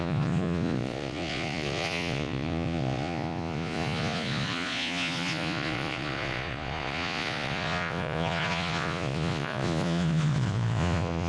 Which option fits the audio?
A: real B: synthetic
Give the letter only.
B